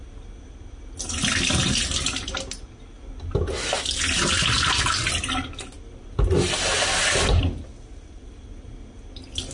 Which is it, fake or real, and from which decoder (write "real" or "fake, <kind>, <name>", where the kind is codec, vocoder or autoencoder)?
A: real